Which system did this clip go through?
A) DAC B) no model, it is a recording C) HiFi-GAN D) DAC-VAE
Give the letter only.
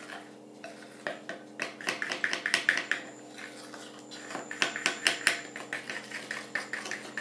B